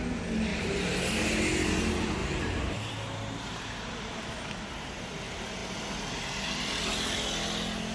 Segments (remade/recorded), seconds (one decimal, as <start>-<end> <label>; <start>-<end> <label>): 0.0-0.5 recorded; 0.5-1.2 remade; 1.2-2.2 recorded; 2.2-5.1 remade; 5.1-7.9 recorded